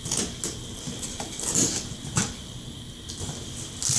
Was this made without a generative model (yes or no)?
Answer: yes